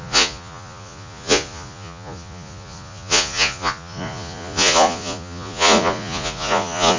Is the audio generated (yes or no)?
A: yes